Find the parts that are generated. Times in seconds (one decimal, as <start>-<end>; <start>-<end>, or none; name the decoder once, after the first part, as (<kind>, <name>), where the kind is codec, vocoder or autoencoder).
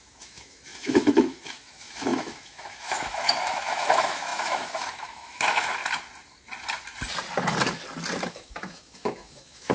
0.0-5.8 (autoencoder, DAC-VAE); 8.3-9.7